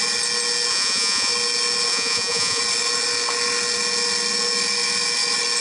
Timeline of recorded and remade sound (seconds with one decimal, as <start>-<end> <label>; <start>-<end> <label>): 0.0-0.7 recorded; 0.7-1.3 remade; 1.3-1.9 recorded; 1.9-2.6 remade; 2.6-5.6 recorded